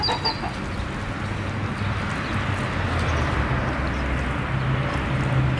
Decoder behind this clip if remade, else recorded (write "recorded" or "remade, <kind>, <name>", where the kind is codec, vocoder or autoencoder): recorded